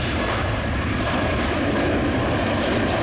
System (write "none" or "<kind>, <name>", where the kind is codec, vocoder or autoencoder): none